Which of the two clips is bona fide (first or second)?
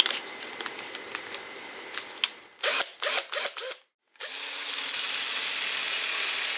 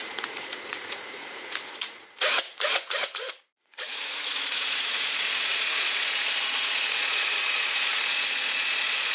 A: first